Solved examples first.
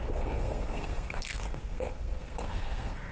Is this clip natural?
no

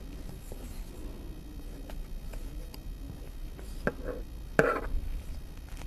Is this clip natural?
yes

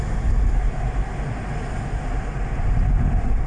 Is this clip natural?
yes